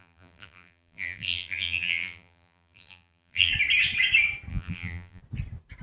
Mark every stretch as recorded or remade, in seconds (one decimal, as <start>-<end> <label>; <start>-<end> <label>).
0.0-3.5 remade; 3.5-4.5 recorded; 4.5-5.2 remade; 5.2-5.8 recorded